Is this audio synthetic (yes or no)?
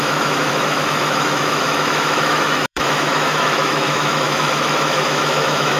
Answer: yes